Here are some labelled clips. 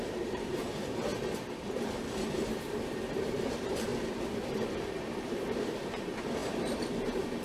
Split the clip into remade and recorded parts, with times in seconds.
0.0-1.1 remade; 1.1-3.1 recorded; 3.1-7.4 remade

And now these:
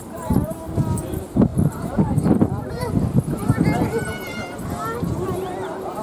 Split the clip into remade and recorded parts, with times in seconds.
0.0-6.0 recorded

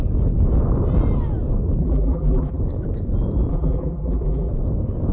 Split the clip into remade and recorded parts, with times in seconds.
0.0-1.8 recorded; 1.8-2.6 remade; 2.6-3.5 recorded; 3.5-4.5 remade; 4.5-5.1 recorded

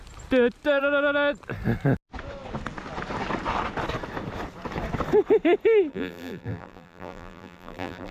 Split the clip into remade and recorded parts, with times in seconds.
0.0-5.9 recorded; 5.9-8.1 remade

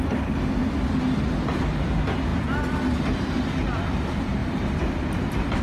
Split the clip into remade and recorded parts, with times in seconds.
0.0-0.6 remade; 0.6-1.6 recorded; 1.6-2.3 remade; 2.3-3.2 recorded; 3.2-5.6 remade

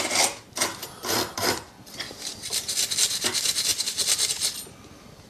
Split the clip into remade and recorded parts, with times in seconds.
0.0-0.8 recorded; 0.8-2.0 remade; 2.0-3.7 recorded; 3.7-4.5 remade; 4.5-5.3 recorded